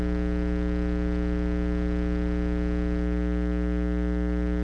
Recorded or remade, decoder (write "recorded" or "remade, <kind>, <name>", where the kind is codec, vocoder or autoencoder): recorded